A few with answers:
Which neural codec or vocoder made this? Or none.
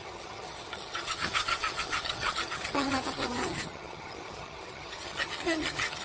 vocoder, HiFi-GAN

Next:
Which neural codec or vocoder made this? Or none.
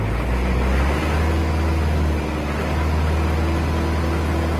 none